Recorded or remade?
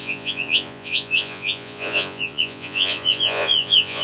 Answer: remade